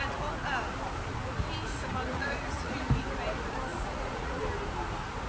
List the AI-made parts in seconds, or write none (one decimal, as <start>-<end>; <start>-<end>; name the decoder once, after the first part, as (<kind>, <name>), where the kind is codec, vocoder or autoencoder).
2.1-2.9 (vocoder, Vocos); 3.7-4.4